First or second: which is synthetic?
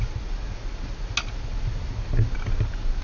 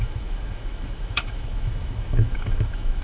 second